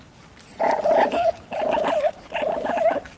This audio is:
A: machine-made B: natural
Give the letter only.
B